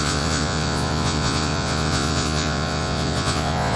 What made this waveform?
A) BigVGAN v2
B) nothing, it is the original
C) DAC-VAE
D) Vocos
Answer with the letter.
D